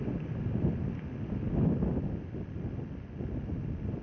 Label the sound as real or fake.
real